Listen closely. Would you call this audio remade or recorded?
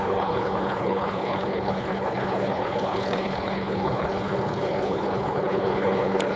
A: remade